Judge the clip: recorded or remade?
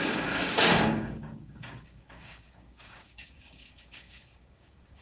remade